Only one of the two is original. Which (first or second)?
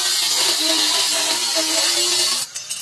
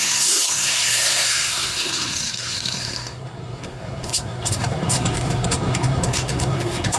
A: first